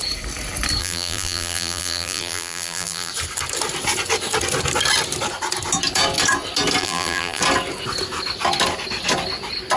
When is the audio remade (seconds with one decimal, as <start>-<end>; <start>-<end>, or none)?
0.8-3.1; 6.8-7.4